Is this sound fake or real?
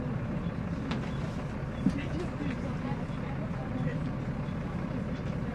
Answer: real